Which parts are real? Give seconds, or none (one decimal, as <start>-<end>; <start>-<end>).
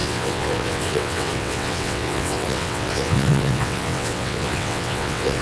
none